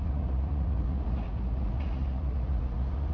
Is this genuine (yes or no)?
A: no